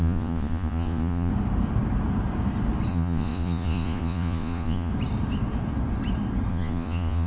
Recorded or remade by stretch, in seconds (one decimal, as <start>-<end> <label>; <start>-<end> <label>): 0.0-1.3 remade; 1.3-2.9 recorded; 2.9-4.9 remade; 4.9-6.5 recorded; 6.5-7.3 remade